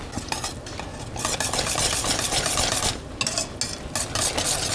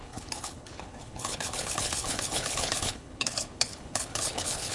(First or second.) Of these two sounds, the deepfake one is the second